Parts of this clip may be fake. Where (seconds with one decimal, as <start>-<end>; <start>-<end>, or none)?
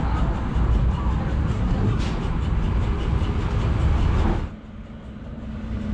1.5-2.0